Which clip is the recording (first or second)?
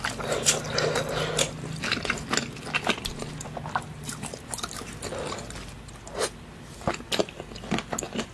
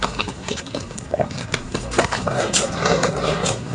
first